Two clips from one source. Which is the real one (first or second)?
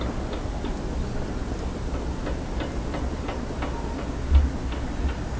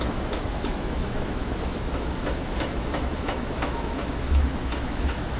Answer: first